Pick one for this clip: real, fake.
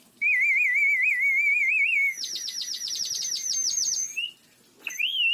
real